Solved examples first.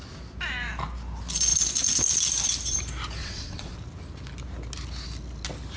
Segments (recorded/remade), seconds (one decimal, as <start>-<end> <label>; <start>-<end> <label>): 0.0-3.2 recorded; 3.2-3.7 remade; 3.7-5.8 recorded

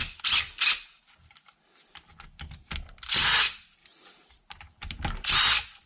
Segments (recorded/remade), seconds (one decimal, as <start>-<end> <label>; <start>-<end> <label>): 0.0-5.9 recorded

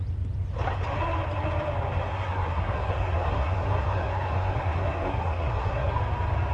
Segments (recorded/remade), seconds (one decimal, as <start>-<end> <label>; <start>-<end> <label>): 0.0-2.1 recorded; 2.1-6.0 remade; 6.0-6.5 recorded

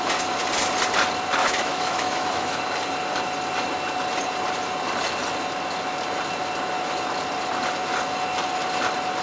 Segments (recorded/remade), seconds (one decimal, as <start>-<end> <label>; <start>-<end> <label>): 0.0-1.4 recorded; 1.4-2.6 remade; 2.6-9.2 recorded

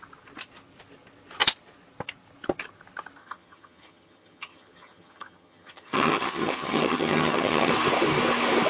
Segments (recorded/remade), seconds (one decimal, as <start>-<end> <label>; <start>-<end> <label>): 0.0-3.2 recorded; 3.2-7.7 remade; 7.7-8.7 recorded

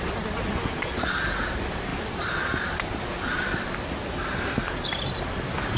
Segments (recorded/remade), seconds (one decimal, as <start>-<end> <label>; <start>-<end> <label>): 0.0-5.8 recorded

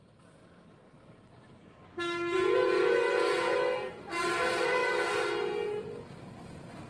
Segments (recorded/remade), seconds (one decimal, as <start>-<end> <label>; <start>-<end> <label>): 0.0-0.4 remade; 0.4-3.9 recorded; 3.9-4.8 remade; 4.8-5.8 recorded; 5.8-6.9 remade